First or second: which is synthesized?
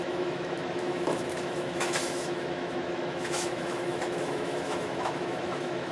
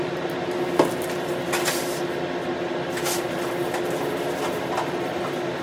first